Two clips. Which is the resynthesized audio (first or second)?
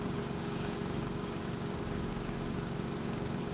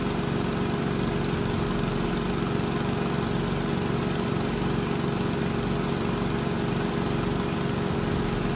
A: first